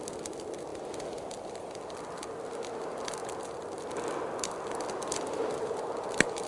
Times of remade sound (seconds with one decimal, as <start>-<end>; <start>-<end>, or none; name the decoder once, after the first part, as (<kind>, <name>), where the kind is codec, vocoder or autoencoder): none